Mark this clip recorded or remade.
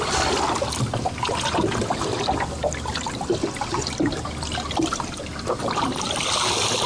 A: recorded